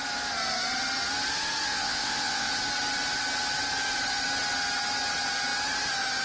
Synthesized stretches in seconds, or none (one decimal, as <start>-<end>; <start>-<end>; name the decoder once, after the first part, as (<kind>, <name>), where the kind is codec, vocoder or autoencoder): 1.7-2.5 (vocoder, WaveNeXt)